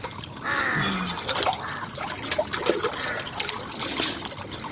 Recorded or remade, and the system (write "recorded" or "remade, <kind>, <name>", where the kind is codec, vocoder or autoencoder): recorded